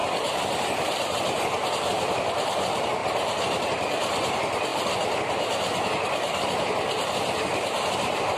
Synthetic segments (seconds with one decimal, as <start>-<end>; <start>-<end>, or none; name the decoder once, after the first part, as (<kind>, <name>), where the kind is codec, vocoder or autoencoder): 3.0-4.1 (vocoder, BigVGAN v2)